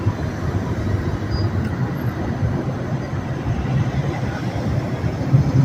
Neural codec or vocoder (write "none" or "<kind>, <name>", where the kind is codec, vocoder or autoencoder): none